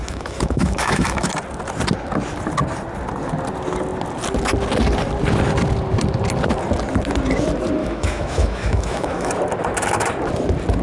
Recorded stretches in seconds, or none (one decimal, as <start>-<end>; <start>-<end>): 1.3-7.8; 9.3-10.8